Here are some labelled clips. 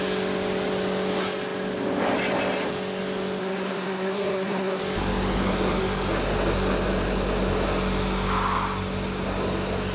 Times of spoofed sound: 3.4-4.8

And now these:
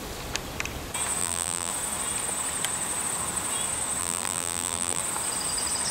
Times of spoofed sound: 1.2-1.7; 4.0-5.0

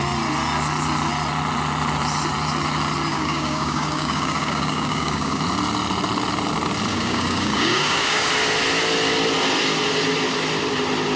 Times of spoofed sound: 3.1-5.4; 6.9-8.3

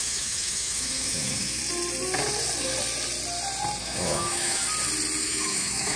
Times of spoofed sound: 0.0-1.6; 3.8-4.6; 5.2-6.0

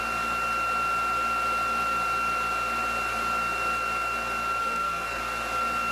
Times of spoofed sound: 4.6-5.2

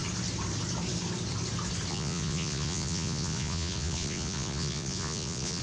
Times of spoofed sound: 1.9-5.6

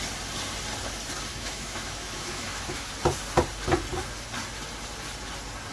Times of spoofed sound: 1.3-2.9

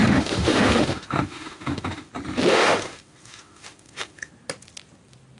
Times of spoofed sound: 0.0-2.1; 2.5-4.3